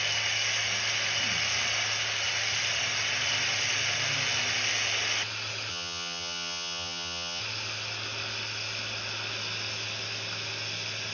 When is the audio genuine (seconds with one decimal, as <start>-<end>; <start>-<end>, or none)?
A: 0.0-5.7; 7.4-11.1